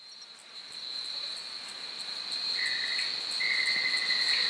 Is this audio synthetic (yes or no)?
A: no